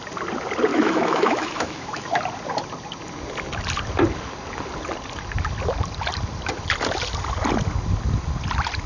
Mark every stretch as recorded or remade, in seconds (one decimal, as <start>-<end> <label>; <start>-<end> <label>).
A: 0.0-0.7 recorded; 0.7-2.2 remade; 2.2-8.9 recorded